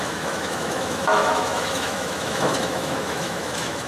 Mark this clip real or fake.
fake